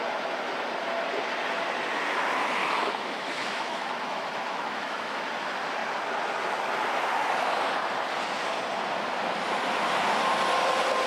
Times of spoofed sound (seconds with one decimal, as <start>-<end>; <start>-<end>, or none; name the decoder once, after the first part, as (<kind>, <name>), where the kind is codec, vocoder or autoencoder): 2.6-5.2 (autoencoder, DAC-VAE)